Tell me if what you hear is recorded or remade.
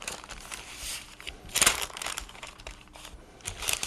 remade